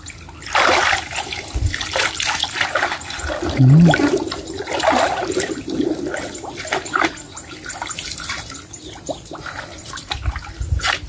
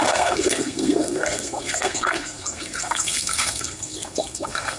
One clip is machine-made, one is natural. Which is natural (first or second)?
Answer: first